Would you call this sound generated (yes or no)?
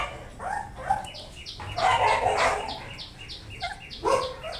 no